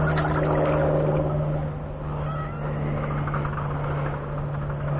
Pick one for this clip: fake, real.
real